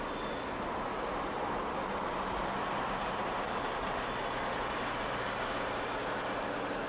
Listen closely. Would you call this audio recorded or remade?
recorded